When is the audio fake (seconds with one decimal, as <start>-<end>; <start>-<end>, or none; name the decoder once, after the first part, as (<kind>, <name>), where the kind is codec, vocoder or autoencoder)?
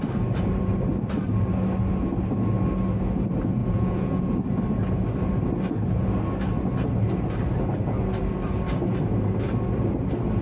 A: 3.6-4.2 (vocoder, Vocos)